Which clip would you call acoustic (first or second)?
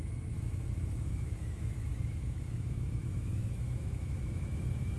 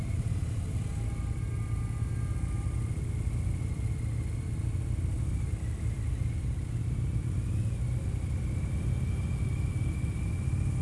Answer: second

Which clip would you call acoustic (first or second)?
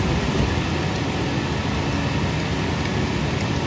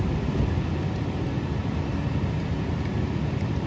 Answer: first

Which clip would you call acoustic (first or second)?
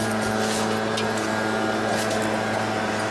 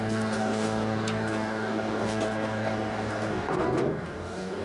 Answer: first